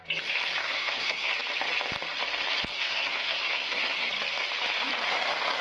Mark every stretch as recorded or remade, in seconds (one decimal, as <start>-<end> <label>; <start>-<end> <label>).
0.0-0.6 recorded; 0.6-1.3 remade; 1.3-2.7 recorded; 2.7-4.1 remade; 4.1-5.6 recorded